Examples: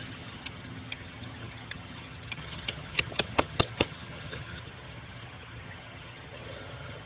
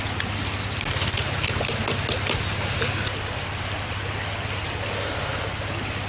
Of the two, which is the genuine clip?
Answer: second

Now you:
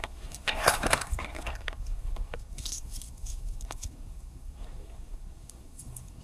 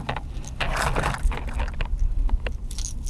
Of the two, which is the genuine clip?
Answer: second